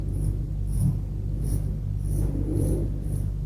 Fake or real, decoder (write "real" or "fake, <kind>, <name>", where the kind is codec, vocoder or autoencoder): real